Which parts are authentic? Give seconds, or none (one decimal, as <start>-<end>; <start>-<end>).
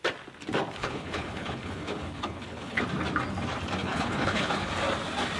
0.0-0.8; 2.8-3.8; 4.7-5.4